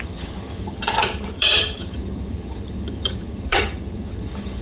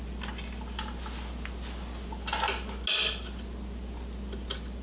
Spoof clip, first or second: first